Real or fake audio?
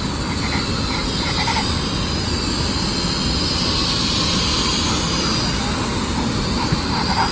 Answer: real